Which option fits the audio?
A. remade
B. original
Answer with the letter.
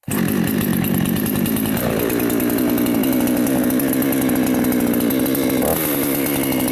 B